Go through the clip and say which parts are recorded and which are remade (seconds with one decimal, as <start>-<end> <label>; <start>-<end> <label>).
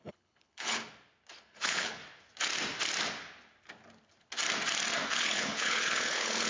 0.0-0.8 remade; 0.8-1.4 recorded; 1.4-2.0 remade; 2.0-5.1 recorded; 5.1-6.5 remade